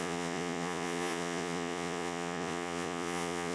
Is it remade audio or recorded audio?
remade